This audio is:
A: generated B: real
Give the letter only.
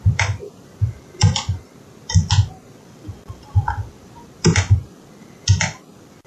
B